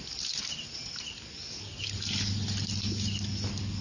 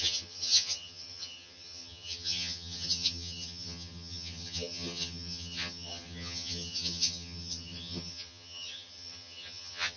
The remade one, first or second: second